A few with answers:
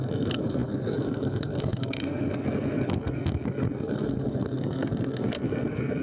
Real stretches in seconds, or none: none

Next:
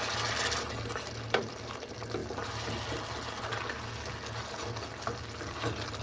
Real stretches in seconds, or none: 0.0-6.0

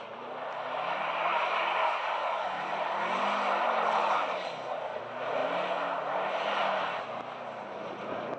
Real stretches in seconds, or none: 0.0-1.8; 2.7-4.0; 5.0-8.4

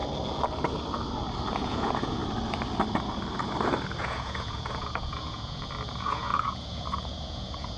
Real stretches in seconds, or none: 0.0-1.5; 2.2-4.0

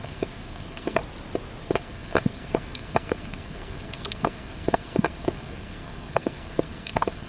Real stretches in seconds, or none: 1.0-1.6

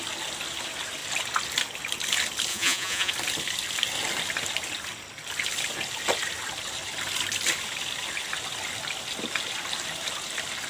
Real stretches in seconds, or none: 0.0-2.5; 3.1-10.7